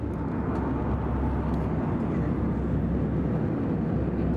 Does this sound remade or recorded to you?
recorded